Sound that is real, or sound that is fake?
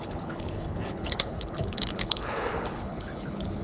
fake